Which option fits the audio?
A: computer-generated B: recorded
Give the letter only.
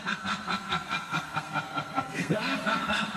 A